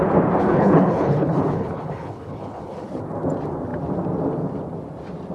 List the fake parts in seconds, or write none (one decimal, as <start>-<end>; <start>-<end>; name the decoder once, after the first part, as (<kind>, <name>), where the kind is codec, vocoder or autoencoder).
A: 0.4-3.0 (codec, HILCodec)